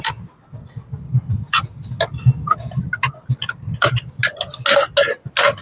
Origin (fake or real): real